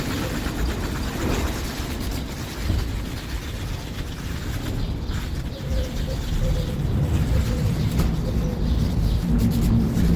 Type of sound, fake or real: real